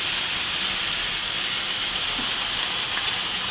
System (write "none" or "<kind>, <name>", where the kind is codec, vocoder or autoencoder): none